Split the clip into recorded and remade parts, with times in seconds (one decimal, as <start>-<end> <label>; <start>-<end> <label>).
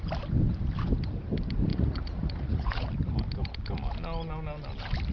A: 0.0-1.7 recorded; 1.7-2.9 remade; 2.9-5.1 recorded